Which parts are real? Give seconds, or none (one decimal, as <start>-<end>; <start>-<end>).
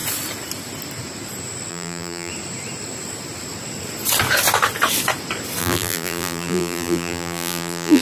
0.0-1.7; 2.3-5.6